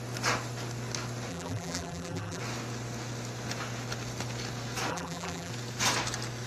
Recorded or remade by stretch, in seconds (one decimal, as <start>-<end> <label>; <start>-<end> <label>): 0.0-1.3 recorded; 1.3-2.4 remade; 2.4-4.9 recorded; 4.9-5.5 remade; 5.5-6.5 recorded